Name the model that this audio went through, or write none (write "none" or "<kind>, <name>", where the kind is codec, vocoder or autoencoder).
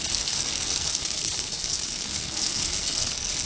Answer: codec, SNAC